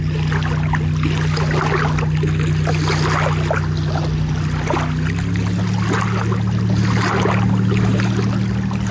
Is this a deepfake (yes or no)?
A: no